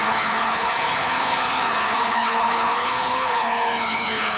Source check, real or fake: fake